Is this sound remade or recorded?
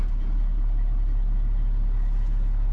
recorded